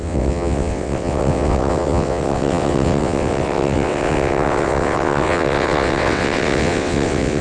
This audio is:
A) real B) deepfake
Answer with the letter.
B